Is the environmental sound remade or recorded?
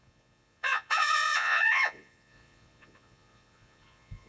remade